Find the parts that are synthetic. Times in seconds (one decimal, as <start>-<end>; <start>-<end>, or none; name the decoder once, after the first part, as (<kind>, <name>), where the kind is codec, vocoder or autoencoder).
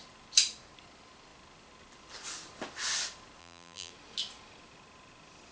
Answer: 3.4-3.9 (vocoder, BigVGAN v2)